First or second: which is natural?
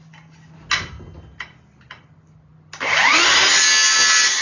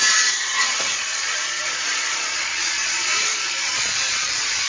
first